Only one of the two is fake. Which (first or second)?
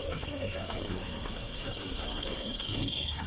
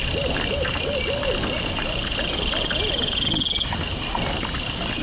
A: first